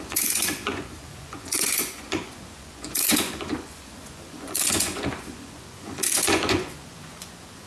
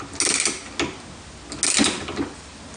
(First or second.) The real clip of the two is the second